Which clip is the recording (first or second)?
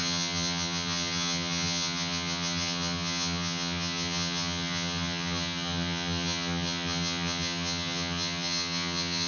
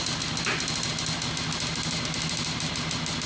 second